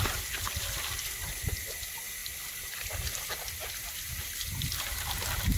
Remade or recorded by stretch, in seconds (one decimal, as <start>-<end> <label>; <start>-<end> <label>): 0.0-5.6 recorded